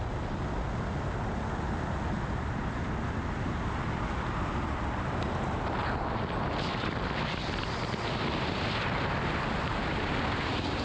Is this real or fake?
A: real